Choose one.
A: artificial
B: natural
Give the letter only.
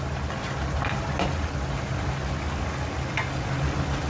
B